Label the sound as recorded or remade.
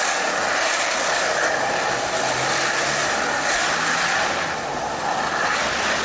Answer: recorded